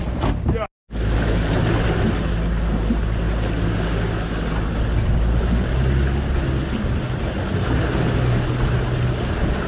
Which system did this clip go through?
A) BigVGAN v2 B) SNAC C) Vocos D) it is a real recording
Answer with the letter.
D